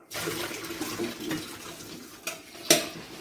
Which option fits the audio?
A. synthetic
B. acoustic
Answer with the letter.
B